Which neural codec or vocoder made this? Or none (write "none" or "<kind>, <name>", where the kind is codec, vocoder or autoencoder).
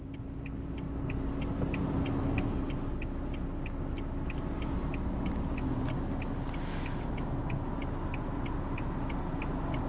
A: none